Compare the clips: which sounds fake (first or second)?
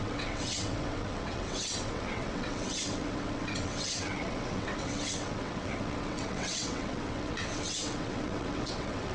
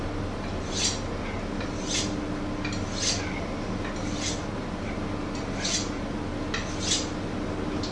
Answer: first